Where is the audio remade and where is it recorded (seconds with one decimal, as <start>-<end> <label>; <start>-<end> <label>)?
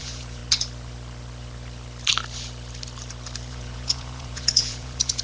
0.0-0.4 remade; 0.4-3.5 recorded; 3.5-5.2 remade